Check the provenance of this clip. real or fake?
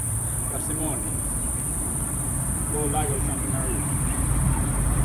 fake